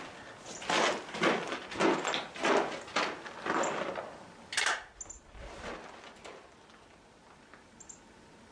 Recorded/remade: recorded